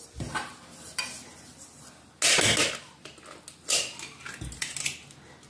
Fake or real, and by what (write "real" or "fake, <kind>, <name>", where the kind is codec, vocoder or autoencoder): real